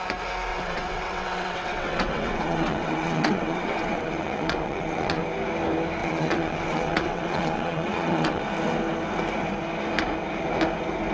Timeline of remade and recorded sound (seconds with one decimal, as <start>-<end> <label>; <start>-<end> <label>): 0.0-0.5 recorded; 0.5-5.2 remade; 5.2-6.0 recorded; 6.0-8.4 remade; 8.4-11.1 recorded